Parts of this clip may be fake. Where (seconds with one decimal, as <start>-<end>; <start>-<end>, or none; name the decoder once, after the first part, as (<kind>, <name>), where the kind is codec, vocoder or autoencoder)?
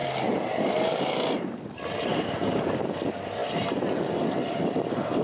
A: 2.1-2.9 (codec, DAC)